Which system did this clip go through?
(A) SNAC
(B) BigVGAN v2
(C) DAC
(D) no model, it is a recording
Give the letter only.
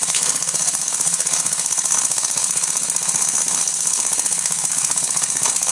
A